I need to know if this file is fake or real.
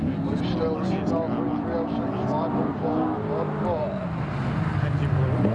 real